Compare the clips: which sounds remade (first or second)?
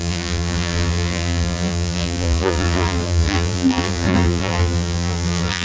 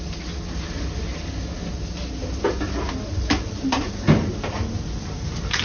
first